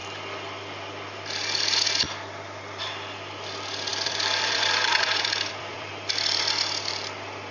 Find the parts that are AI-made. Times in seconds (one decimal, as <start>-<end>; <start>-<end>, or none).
3.9-5.9